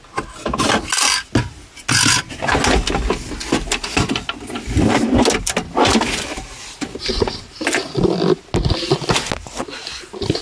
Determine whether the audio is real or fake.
real